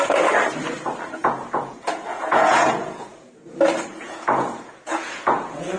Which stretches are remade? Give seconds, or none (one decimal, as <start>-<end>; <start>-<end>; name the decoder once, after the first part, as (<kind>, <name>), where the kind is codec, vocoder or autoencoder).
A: 1.2-3.3 (vocoder, Vocos); 3.9-5.8